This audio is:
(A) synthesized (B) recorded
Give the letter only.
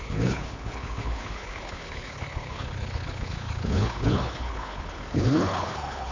A